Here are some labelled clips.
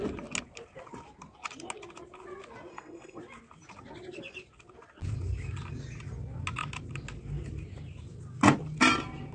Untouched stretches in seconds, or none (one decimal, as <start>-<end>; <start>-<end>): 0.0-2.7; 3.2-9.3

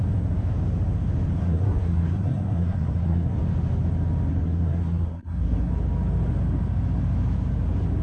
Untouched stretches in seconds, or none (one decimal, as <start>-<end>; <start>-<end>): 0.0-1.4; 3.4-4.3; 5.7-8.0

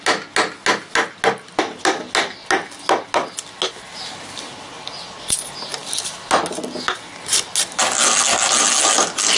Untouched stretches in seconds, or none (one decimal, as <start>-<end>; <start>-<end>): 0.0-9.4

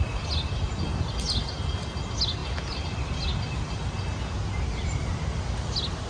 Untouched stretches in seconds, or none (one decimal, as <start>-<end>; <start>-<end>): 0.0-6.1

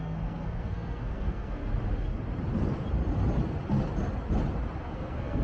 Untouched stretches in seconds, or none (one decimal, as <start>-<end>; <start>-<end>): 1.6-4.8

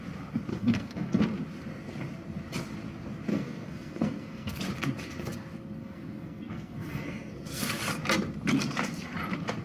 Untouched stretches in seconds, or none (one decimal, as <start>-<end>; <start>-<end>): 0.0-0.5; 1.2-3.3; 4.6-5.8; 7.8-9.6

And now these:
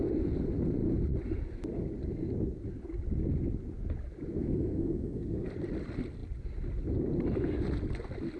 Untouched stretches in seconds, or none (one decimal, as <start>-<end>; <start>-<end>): 0.0-4.4; 5.5-8.4